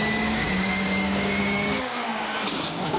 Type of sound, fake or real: fake